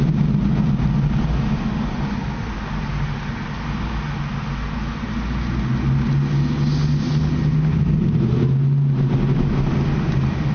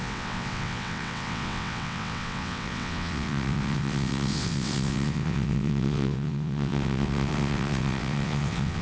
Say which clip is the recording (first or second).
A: first